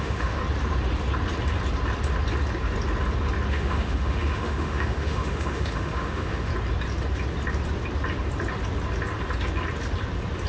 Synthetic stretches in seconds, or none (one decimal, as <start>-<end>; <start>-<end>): 0.0-0.4; 3.5-6.5